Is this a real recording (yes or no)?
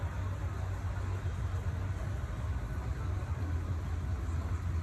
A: yes